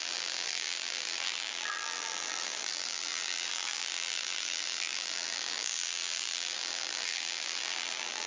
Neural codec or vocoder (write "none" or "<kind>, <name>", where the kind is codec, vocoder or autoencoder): vocoder, BigVGAN v2